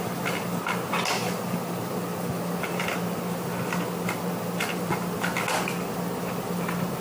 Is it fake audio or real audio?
real